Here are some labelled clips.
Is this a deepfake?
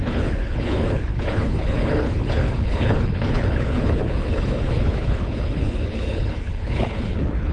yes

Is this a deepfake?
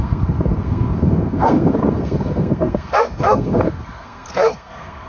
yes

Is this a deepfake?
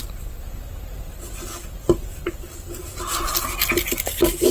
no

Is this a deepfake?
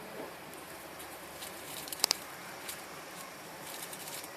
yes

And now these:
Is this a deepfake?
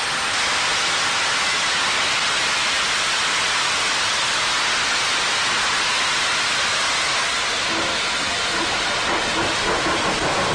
no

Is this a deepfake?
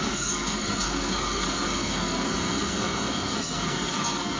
yes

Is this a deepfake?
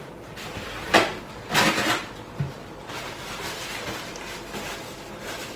no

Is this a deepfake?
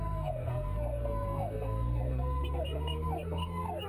yes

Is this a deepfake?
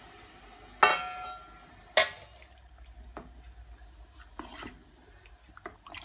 no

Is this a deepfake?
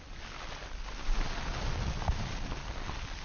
no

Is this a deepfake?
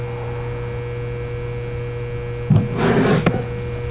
no